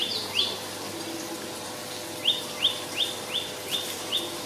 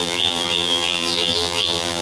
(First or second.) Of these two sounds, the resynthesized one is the second